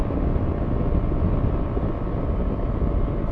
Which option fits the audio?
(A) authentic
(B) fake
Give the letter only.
A